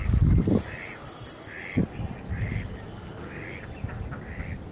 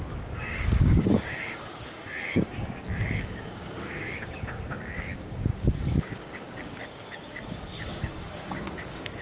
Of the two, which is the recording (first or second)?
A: first